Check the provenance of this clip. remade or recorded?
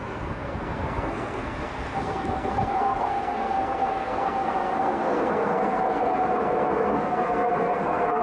remade